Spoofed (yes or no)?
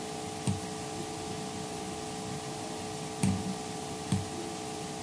no